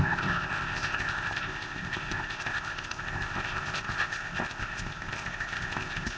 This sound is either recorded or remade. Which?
remade